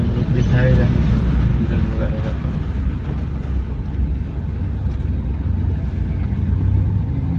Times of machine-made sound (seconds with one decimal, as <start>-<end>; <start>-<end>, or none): 1.5-2.0